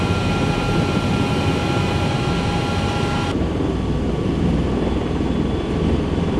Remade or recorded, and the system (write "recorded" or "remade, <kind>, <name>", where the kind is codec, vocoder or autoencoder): recorded